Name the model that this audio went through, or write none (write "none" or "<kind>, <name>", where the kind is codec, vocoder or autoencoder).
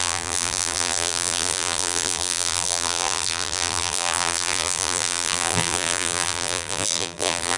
vocoder, BigVGAN v2